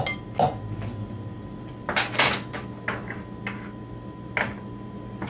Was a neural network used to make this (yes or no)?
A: no